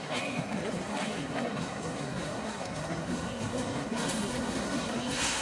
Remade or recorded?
remade